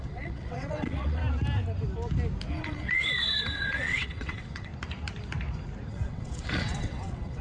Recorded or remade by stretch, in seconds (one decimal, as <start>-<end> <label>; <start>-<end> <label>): 0.0-1.2 remade; 1.2-2.5 recorded; 2.5-4.7 remade; 4.7-5.9 recorded; 5.9-7.4 remade